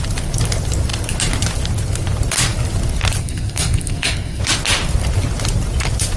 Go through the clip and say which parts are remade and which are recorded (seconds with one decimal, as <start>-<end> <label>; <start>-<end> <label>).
0.0-3.2 recorded; 3.2-4.4 remade; 4.4-6.2 recorded